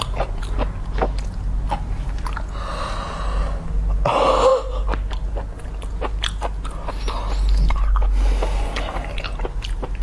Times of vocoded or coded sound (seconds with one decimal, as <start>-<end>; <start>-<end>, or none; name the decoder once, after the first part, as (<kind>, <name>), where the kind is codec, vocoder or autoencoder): none